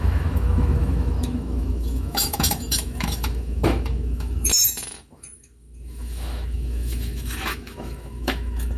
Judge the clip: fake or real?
fake